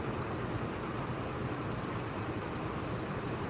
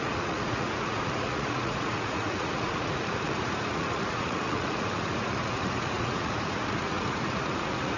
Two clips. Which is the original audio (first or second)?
first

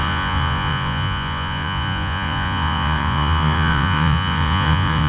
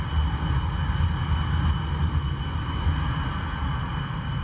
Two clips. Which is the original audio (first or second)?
second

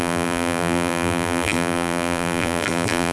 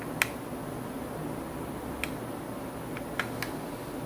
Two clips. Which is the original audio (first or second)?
second